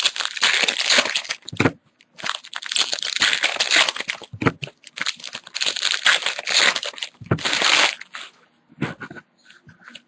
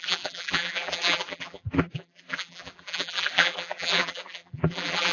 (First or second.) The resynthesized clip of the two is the second